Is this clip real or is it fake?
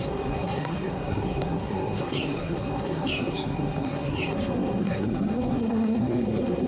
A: fake